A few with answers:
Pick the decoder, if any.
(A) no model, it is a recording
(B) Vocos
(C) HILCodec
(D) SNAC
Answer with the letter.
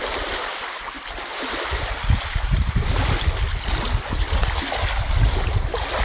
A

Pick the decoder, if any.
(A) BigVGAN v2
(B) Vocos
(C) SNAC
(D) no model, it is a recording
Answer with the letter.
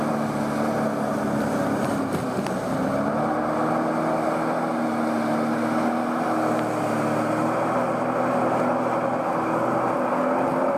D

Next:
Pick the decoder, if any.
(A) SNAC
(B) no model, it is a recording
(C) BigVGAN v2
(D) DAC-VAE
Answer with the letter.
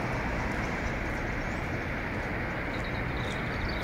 B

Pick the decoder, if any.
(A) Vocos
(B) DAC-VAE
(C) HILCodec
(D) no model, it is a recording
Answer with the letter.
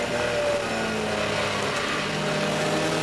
D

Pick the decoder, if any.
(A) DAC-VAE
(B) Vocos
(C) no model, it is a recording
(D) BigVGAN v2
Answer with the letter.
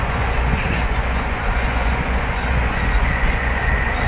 B